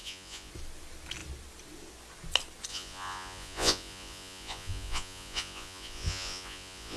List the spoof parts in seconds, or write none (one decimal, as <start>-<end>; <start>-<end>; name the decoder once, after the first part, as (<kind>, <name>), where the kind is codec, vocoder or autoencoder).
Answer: 0.0-0.5 (vocoder, Vocos); 2.7-7.0